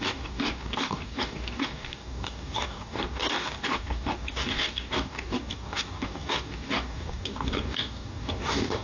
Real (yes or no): no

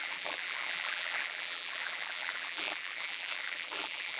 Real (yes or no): no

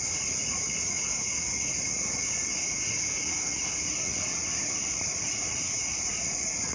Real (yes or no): no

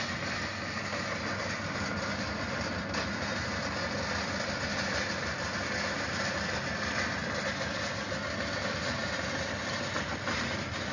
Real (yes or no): yes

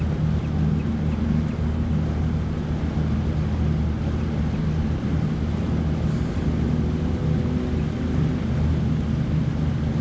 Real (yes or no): yes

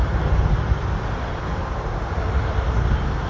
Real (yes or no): yes